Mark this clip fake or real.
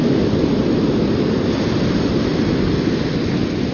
real